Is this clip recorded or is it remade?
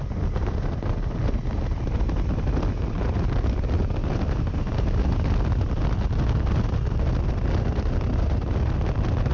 recorded